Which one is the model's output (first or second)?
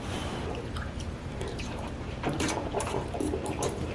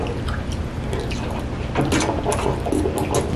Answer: first